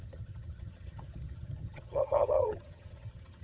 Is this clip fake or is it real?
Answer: fake